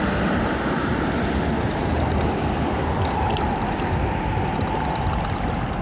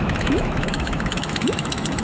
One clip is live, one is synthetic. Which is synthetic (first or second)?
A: second